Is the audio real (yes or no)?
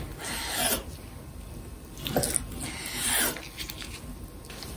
yes